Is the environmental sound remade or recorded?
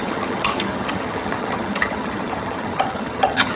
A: remade